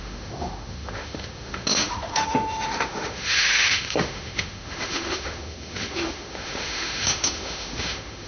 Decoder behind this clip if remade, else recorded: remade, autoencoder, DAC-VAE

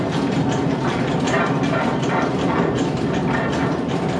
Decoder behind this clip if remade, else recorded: recorded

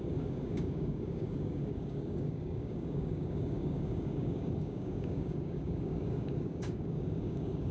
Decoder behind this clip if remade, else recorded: remade, codec, DAC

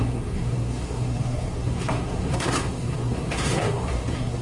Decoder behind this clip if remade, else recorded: remade, codec, SNAC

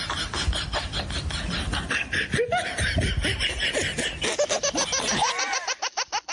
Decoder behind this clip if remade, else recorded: recorded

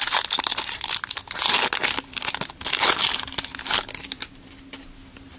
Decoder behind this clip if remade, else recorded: recorded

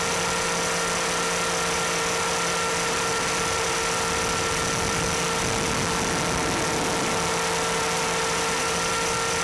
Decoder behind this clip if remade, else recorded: recorded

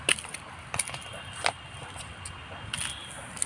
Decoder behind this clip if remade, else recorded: recorded